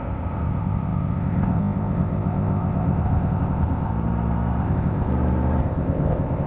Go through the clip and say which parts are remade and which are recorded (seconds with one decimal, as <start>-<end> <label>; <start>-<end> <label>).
0.0-3.9 remade; 3.9-4.6 recorded; 4.6-5.1 remade; 5.1-5.6 recorded; 5.6-6.5 remade